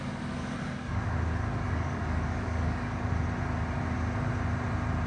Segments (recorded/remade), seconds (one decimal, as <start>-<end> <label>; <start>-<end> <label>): 0.0-3.1 remade; 3.1-5.1 recorded

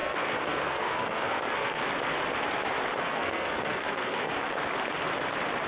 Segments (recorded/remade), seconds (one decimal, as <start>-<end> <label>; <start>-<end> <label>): 0.0-1.8 remade; 1.8-3.0 recorded; 3.0-4.3 remade; 4.3-5.7 recorded